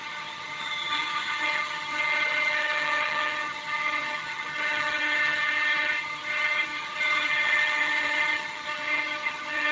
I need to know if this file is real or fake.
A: fake